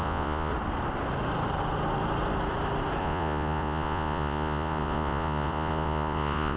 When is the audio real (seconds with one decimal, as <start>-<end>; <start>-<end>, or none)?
0.5-3.0